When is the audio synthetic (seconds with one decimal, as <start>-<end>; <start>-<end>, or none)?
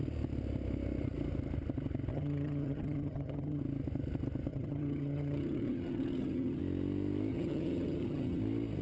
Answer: 2.1-3.6; 4.5-6.6; 7.3-8.4